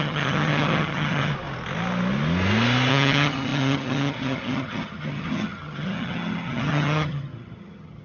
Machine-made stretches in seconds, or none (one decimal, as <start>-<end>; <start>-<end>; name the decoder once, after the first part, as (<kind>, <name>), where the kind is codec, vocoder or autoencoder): 0.0-1.3 (vocoder, HiFi-GAN); 2.9-8.0